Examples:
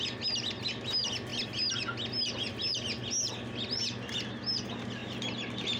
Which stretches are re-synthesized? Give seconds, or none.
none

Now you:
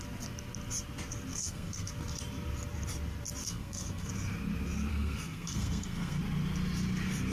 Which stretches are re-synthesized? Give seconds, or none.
1.3-1.9 (codec, SNAC); 3.4-4.1; 4.9-6.2